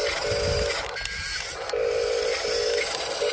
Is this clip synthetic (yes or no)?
no